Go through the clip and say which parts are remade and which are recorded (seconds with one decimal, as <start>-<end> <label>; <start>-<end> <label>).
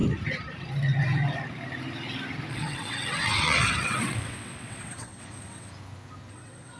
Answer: 0.0-2.5 recorded; 2.5-5.7 remade; 5.7-6.3 recorded; 6.3-6.8 remade